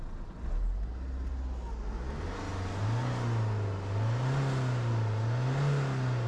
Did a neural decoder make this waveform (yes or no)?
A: no